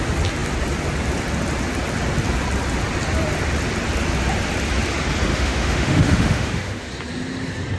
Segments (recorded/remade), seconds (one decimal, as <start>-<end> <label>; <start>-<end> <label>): 0.0-5.3 recorded; 5.3-6.9 remade; 6.9-7.8 recorded